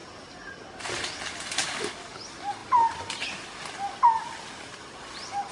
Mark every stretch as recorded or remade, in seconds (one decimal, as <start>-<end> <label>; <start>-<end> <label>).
0.0-1.6 recorded; 1.6-2.2 remade; 2.2-5.5 recorded